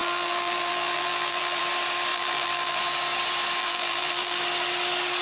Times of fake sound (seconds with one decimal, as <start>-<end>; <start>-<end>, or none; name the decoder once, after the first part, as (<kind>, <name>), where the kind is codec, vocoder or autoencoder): 0.0-1.6 (vocoder, BigVGAN v2); 2.1-2.8; 3.6-4.4

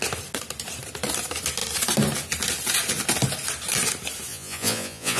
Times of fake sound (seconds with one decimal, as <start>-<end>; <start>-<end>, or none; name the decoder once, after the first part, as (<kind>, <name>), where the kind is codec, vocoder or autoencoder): 4.3-5.2 (vocoder, Vocos)

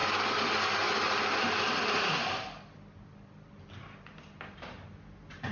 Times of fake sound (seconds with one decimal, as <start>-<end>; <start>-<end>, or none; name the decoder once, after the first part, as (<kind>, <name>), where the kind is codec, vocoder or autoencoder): none

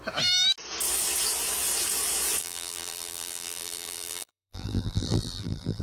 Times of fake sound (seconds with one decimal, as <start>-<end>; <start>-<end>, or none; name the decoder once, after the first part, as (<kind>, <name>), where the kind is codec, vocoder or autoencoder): 2.4-5.8 (vocoder, BigVGAN v2)

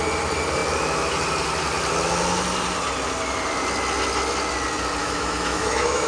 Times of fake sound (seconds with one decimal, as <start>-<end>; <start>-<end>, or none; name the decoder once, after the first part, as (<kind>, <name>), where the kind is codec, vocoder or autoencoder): 5.0-6.1 (autoencoder, DAC-VAE)

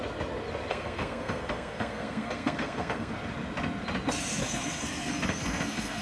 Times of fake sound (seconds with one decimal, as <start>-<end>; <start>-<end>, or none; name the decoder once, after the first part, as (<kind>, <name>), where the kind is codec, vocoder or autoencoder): 0.7-3.1 (codec, SNAC); 4.4-6.0

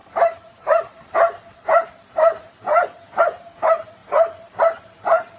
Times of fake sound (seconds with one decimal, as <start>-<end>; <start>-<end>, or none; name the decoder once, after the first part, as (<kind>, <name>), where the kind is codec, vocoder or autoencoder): 0.0-5.4 (vocoder, BigVGAN v2)

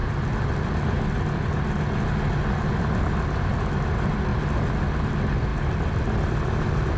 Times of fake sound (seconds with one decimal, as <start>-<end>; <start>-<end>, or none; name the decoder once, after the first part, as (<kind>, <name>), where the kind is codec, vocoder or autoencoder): none